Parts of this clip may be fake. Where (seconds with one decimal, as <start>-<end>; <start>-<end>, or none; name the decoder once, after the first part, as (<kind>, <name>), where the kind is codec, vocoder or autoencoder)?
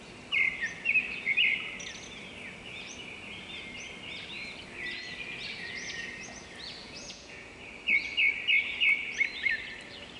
6.8-7.5 (vocoder, Vocos)